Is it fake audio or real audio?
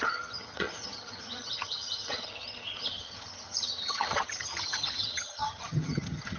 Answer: fake